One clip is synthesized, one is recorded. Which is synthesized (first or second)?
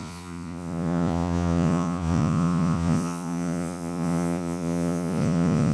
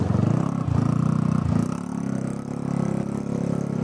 first